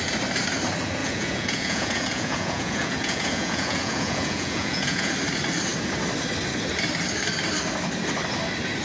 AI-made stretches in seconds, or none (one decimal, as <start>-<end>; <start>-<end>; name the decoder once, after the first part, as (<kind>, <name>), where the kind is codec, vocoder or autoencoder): 1.0-5.1 (vocoder, Vocos)